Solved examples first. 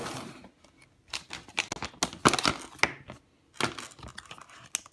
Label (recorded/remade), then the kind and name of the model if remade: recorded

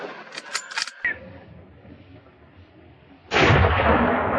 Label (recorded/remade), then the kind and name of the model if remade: recorded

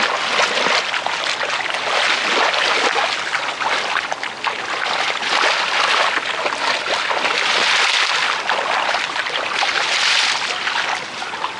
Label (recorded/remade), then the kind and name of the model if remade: recorded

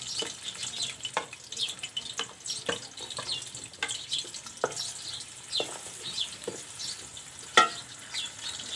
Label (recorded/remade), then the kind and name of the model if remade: recorded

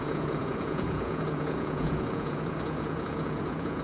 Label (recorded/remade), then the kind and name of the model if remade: remade, vocoder, Vocos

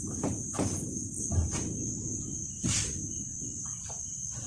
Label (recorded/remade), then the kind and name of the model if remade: recorded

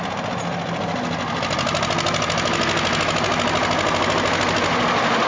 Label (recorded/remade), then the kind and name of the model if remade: recorded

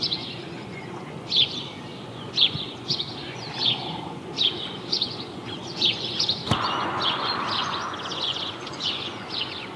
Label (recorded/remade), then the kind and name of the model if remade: remade, vocoder, Vocos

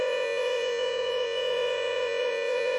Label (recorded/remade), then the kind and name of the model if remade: remade, vocoder, Vocos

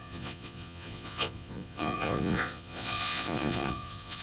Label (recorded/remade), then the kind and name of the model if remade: remade, vocoder, Vocos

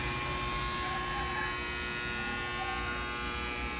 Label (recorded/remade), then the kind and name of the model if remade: recorded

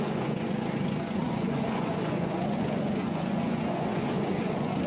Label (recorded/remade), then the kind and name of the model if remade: remade, vocoder, Vocos